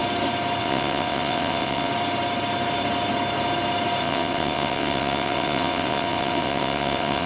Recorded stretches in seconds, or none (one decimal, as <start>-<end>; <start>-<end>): 0.0-0.6; 1.9-4.0